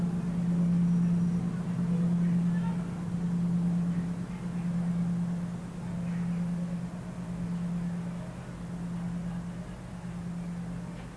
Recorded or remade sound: recorded